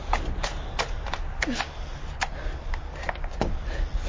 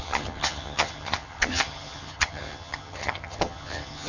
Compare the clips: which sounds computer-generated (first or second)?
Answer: second